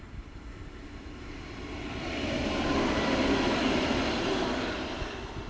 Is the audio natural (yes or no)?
yes